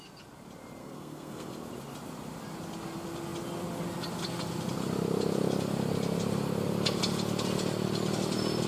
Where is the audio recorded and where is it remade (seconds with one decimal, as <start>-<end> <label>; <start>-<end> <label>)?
0.0-0.8 recorded; 0.8-1.5 remade; 1.5-8.7 recorded